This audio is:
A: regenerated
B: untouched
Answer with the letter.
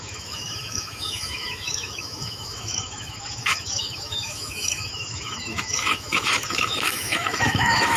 A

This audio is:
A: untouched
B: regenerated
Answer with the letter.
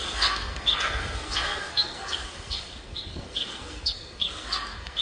B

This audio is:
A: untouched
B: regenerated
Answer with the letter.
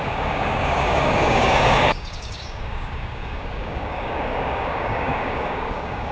B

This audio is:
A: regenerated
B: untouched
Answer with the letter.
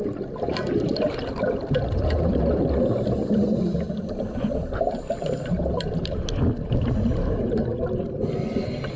B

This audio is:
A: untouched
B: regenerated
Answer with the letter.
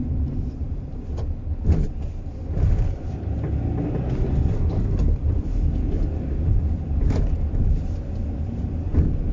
A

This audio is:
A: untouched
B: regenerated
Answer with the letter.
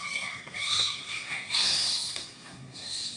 B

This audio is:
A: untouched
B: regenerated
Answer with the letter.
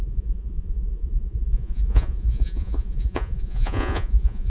B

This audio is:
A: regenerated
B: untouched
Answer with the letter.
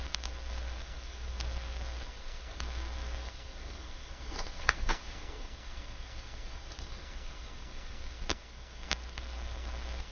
A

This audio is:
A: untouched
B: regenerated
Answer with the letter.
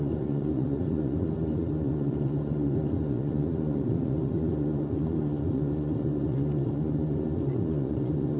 B